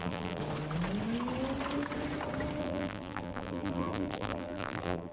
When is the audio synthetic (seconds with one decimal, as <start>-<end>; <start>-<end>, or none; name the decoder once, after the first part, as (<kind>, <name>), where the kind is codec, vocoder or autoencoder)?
0.0-0.4 (vocoder, BigVGAN v2); 2.6-5.1